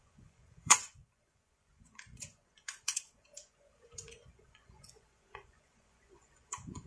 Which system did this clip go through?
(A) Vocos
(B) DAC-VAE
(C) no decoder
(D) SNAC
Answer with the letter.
A